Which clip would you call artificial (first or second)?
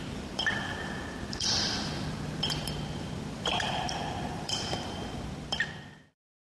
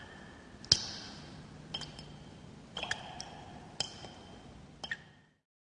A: first